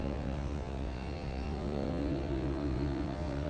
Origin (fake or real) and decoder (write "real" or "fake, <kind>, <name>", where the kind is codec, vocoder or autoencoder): fake, vocoder, WaveNeXt